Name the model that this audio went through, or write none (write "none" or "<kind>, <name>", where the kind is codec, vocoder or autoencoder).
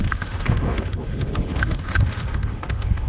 autoencoder, DAC-VAE